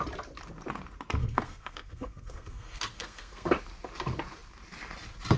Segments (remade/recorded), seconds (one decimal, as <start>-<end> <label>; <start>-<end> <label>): 0.0-1.2 recorded; 1.2-3.5 remade; 3.5-5.4 recorded